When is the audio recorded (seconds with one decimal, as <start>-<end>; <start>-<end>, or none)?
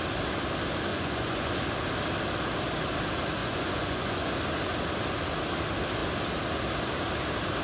0.0-0.9; 1.5-3.4; 4.3-7.6